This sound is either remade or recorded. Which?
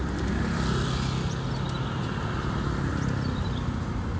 recorded